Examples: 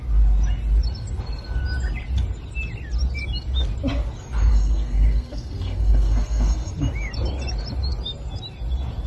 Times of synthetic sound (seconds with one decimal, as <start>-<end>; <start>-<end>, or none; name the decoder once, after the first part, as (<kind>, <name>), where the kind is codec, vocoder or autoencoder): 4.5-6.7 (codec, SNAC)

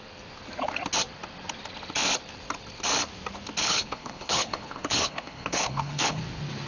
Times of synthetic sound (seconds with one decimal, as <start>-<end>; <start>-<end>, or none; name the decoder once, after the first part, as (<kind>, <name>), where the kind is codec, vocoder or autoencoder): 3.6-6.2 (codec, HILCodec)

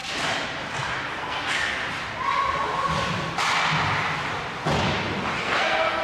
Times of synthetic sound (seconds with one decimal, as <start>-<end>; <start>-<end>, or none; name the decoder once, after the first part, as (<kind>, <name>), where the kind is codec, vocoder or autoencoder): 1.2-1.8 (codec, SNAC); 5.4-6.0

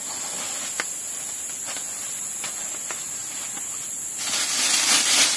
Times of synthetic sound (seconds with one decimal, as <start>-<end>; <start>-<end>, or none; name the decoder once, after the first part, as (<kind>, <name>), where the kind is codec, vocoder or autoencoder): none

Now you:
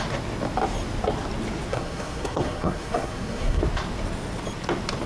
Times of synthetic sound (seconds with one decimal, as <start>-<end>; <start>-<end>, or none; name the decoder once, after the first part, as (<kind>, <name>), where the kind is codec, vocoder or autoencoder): 1.7-3.6 (codec, SNAC)

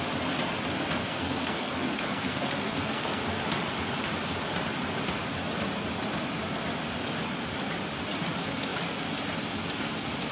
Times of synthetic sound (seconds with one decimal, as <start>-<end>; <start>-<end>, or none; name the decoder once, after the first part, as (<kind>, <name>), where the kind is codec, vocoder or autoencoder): 1.0-3.2 (codec, SNAC)